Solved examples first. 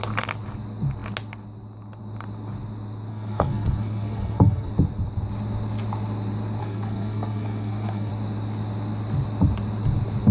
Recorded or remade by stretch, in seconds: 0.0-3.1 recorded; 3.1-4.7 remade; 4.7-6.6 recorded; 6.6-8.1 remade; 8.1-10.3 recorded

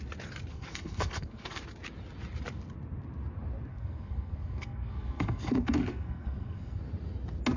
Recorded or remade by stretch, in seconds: 0.0-0.5 recorded; 0.5-1.6 remade; 1.6-3.7 recorded; 3.7-6.8 remade; 6.8-7.6 recorded

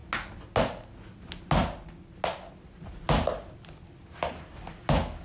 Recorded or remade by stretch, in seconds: 0.0-5.2 recorded

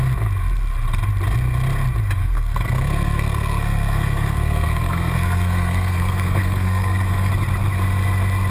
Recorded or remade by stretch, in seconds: 0.0-2.2 recorded; 2.2-7.3 remade; 7.3-8.5 recorded

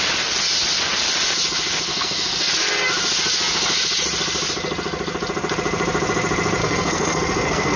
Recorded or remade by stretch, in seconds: 0.0-1.9 recorded; 1.9-2.5 remade; 2.5-6.6 recorded; 6.6-7.8 remade

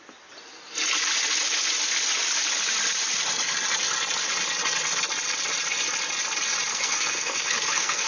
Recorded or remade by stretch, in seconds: 0.0-6.7 recorded; 6.7-8.1 remade